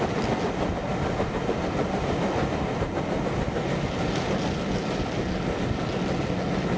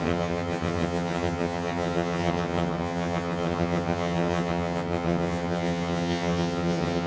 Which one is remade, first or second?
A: second